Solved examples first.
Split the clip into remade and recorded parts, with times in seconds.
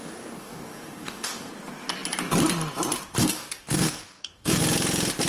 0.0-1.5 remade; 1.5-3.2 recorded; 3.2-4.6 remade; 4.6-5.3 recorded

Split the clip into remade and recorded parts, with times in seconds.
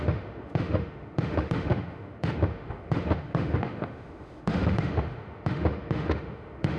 0.0-6.8 remade